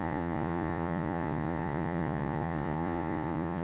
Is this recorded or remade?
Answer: remade